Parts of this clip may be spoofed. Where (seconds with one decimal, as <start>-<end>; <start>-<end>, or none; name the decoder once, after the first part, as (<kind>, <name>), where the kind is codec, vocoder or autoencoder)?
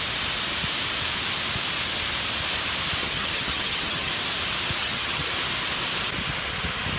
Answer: 3.0-4.1 (vocoder, HiFi-GAN); 4.8-5.3